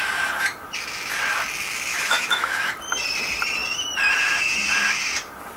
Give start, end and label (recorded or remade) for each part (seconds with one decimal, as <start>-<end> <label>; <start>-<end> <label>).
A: 0.0-1.9 recorded; 1.9-2.7 remade; 2.7-5.6 recorded